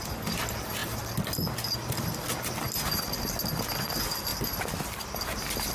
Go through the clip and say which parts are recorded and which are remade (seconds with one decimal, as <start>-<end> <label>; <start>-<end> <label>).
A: 0.0-5.7 recorded